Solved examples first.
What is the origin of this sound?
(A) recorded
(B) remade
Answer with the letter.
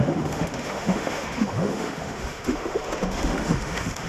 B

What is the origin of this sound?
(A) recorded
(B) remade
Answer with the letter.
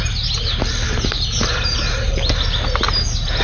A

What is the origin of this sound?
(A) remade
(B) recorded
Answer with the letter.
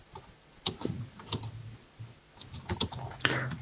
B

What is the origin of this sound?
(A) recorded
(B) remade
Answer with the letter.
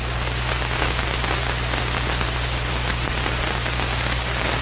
A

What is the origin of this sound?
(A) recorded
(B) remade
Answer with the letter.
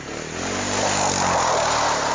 A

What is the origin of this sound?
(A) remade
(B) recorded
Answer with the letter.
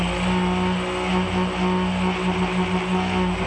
B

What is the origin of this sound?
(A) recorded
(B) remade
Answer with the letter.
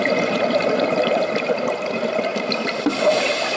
B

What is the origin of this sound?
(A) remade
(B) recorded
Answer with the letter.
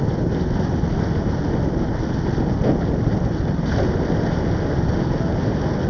B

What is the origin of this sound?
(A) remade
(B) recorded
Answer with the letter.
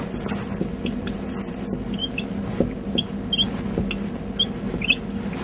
B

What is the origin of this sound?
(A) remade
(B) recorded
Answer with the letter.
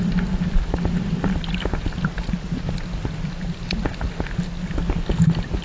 B